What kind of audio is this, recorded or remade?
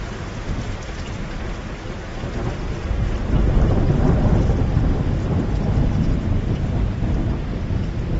recorded